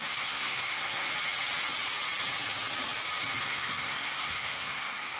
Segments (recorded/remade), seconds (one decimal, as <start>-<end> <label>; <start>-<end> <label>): 0.0-1.1 remade; 1.1-3.4 recorded; 3.4-5.2 remade

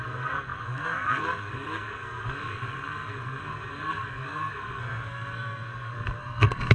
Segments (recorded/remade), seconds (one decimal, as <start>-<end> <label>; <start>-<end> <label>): 0.0-6.7 remade

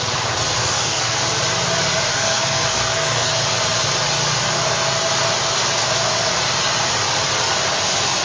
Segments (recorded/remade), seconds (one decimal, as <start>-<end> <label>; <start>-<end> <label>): 0.0-0.6 recorded; 0.6-1.2 remade; 1.2-2.1 recorded; 2.1-3.3 remade; 3.3-8.2 recorded

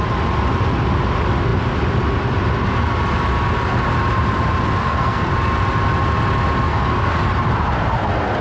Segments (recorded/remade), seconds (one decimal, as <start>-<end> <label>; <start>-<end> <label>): 0.0-4.8 recorded; 4.8-5.3 remade; 5.3-6.7 recorded; 6.7-7.3 remade; 7.3-8.4 recorded

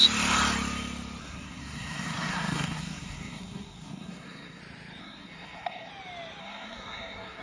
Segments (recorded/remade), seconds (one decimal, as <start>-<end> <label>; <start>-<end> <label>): 0.0-1.2 recorded; 1.2-4.6 remade; 4.6-5.0 recorded; 5.0-5.9 remade; 5.9-6.4 recorded; 6.4-7.4 remade

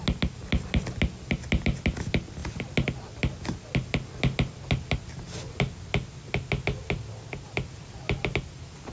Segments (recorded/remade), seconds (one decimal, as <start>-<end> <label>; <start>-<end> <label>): 0.0-8.9 recorded